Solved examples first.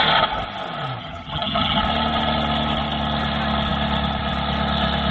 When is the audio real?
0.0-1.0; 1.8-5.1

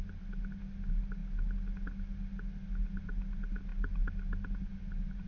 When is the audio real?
0.0-5.3

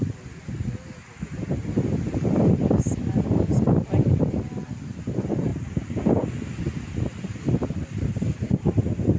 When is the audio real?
0.0-9.2

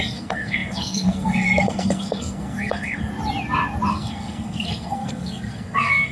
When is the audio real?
3.1-3.9

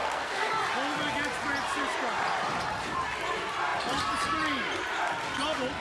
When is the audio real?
0.5-5.8

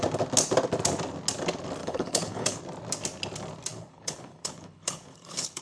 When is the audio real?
0.0-1.8; 2.6-3.7

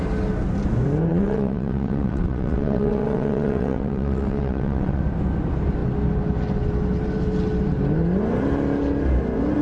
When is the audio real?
0.0-1.1; 5.0-9.6

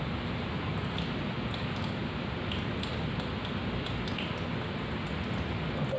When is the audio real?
0.0-6.0